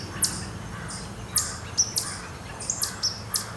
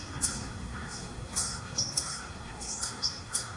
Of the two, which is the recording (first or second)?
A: first